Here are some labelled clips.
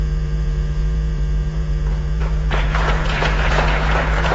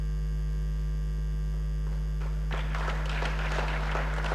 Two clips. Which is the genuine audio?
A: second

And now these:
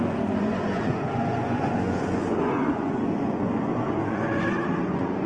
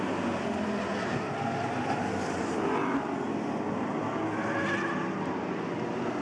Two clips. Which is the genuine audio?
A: second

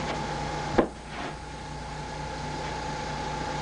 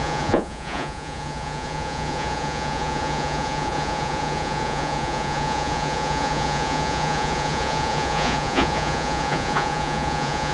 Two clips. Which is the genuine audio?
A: first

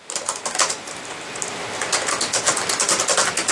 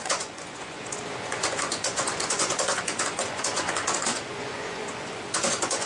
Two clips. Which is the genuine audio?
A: first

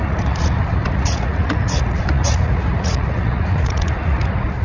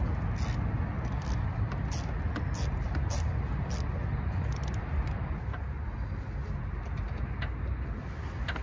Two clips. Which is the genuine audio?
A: second